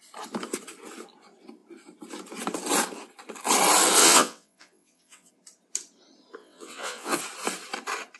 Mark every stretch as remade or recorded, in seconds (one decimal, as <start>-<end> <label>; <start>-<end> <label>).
0.0-4.0 recorded; 4.0-5.3 remade; 5.3-6.4 recorded; 6.4-7.2 remade; 7.2-8.2 recorded